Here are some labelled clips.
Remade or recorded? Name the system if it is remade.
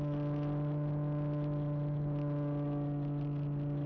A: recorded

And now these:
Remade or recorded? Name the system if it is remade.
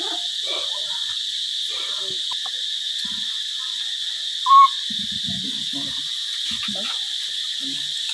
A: recorded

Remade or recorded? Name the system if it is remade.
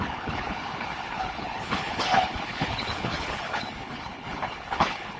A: remade, codec, HILCodec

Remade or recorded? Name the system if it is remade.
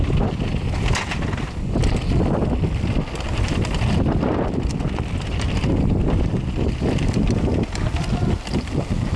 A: recorded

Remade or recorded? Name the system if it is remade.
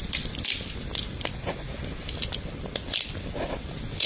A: recorded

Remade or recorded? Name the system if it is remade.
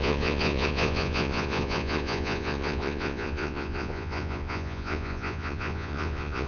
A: remade, vocoder, Vocos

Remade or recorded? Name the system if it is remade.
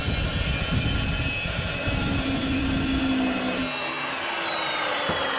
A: recorded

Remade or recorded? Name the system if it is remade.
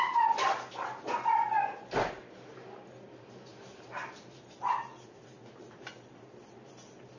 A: recorded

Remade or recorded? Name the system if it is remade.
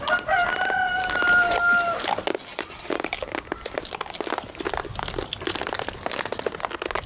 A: recorded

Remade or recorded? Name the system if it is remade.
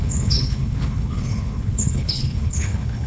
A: remade, codec, HILCodec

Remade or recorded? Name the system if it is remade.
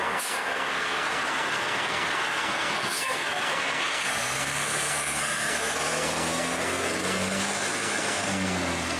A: remade, codec, SNAC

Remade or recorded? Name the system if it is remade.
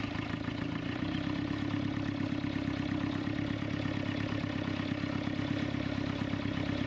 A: recorded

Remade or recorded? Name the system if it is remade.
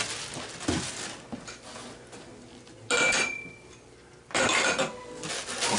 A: recorded